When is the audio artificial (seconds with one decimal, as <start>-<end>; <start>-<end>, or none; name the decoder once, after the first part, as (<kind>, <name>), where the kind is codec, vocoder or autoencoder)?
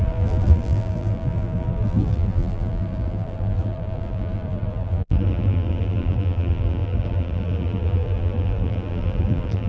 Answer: 0.0-9.7 (vocoder, BigVGAN v2)